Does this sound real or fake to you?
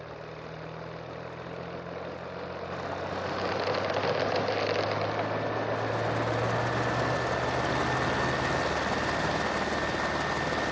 real